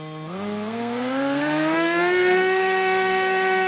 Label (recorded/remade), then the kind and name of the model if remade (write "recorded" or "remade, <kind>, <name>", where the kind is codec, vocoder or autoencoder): remade, codec, SNAC